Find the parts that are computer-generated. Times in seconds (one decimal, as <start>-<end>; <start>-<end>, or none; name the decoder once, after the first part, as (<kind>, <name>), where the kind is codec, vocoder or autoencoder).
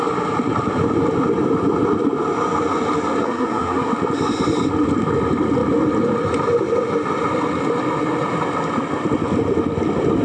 3.2-3.9 (codec, SNAC)